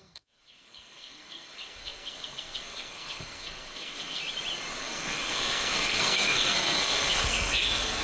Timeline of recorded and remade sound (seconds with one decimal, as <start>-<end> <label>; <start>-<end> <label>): 0.0-4.2 remade; 4.2-4.8 recorded; 4.8-8.0 remade